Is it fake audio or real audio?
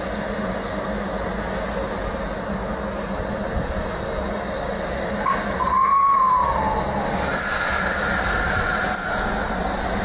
real